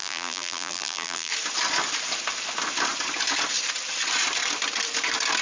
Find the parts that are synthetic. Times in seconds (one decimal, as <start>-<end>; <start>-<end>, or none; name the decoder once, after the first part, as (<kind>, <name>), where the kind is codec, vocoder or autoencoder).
0.0-1.3 (vocoder, BigVGAN v2)